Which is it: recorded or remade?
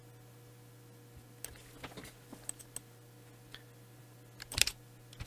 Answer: recorded